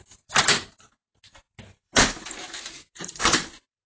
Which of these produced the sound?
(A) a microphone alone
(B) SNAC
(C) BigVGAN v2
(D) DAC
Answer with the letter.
C